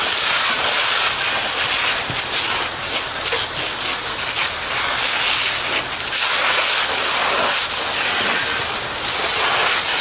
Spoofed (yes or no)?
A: no